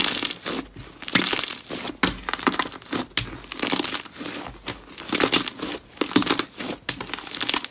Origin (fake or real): real